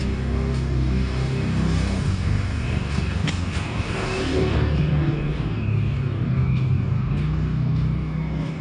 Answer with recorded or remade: remade